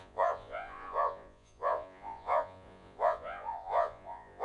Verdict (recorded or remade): remade